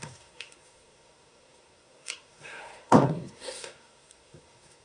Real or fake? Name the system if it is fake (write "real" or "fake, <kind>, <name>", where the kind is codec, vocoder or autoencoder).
fake, codec, SNAC